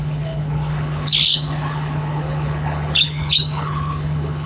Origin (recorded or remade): remade